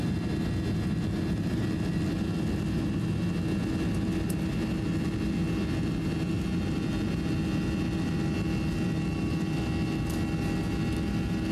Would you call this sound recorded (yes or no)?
yes